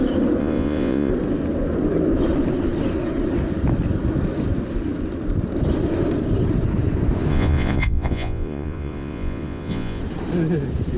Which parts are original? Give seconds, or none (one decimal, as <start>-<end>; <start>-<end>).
0.0-0.4; 1.1-7.3; 10.0-11.0